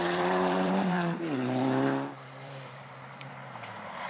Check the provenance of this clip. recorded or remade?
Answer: remade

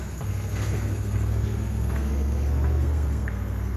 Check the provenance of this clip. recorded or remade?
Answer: remade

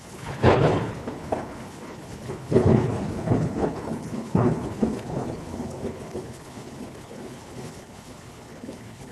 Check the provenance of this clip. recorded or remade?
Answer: remade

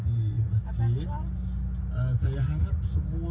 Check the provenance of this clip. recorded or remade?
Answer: recorded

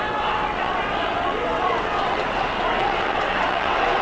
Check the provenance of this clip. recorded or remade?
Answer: remade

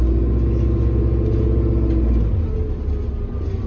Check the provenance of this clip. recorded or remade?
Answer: recorded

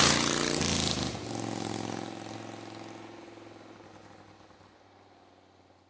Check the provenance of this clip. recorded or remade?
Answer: recorded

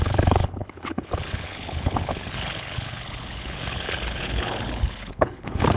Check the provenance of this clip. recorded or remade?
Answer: remade